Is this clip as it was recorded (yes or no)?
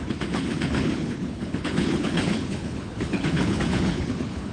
no